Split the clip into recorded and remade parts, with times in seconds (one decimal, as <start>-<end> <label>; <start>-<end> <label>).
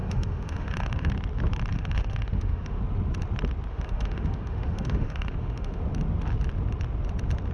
0.0-1.1 remade; 1.1-1.7 recorded; 1.7-2.8 remade; 2.8-3.7 recorded; 3.7-5.8 remade; 5.8-7.5 recorded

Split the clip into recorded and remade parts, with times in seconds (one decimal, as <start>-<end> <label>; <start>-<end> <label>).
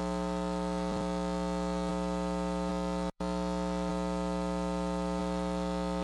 0.0-1.9 remade; 1.9-2.7 recorded; 2.7-3.9 remade; 3.9-5.2 recorded; 5.2-6.0 remade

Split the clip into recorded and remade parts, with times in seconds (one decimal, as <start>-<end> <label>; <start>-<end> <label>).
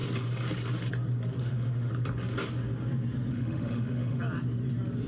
0.0-1.4 recorded; 1.4-1.9 remade; 1.9-3.3 recorded; 3.3-4.2 remade; 4.2-5.1 recorded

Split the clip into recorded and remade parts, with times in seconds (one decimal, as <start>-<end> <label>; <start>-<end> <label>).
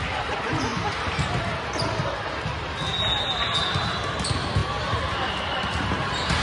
0.0-6.4 recorded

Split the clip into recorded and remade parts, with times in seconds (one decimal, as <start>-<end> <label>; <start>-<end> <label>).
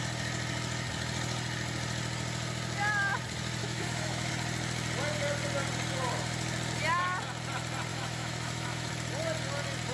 0.0-3.6 recorded; 3.6-4.3 remade; 4.3-7.9 recorded; 7.9-8.9 remade; 8.9-9.9 recorded